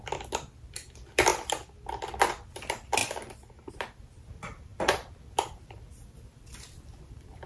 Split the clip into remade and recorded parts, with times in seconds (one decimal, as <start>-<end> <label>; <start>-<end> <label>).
0.0-1.3 remade; 1.3-2.5 recorded; 2.5-3.0 remade; 3.0-3.7 recorded; 3.7-7.5 remade